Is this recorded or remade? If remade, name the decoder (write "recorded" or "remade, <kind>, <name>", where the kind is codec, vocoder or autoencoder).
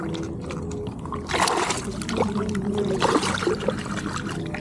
recorded